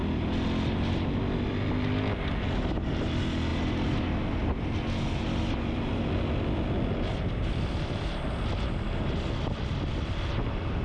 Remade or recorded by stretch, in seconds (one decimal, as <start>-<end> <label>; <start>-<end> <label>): 0.0-10.8 recorded